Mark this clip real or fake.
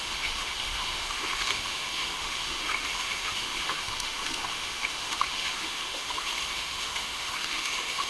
fake